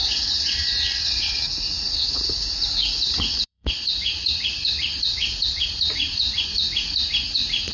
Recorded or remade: remade